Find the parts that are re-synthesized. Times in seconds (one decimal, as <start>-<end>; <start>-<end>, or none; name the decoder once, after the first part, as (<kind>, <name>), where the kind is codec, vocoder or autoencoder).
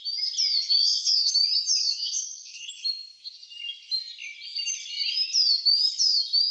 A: 0.8-1.3 (codec, SNAC); 1.8-2.7